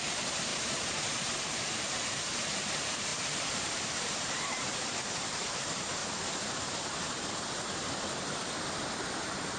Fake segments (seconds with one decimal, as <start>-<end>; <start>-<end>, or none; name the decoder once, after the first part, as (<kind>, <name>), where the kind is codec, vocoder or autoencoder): 0.0-6.0 (vocoder, BigVGAN v2); 9.1-9.6